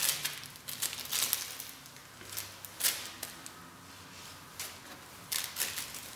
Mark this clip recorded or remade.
recorded